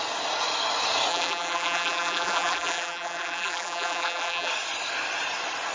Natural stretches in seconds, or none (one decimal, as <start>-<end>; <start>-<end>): 0.0-1.1; 4.5-5.7